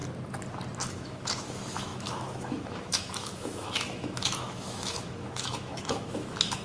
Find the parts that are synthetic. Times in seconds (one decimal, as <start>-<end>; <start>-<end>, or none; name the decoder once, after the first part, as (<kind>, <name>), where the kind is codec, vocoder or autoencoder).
0.9-6.6 (autoencoder, DAC-VAE)